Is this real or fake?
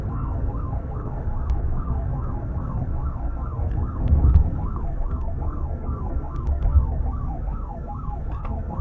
fake